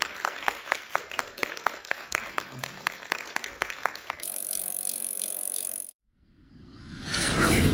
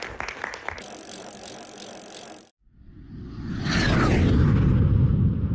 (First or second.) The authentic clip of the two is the second